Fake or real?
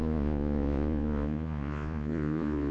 fake